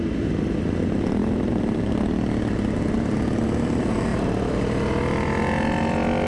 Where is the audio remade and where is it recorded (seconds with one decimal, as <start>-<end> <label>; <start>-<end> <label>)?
0.0-1.2 recorded; 1.2-2.0 remade; 2.0-4.1 recorded; 4.1-4.6 remade; 4.6-6.3 recorded